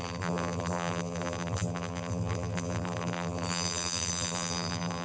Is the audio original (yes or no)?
no